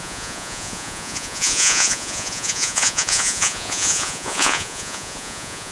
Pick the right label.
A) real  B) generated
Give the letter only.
B